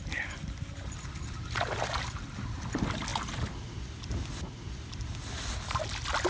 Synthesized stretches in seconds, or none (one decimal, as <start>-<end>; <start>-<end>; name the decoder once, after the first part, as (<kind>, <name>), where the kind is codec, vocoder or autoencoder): none